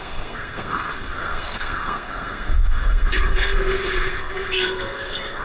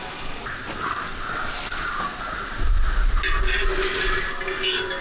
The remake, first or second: first